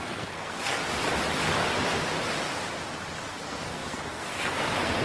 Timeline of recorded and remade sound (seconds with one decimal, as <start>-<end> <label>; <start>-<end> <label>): 0.0-0.8 remade; 0.8-3.3 recorded; 3.3-5.0 remade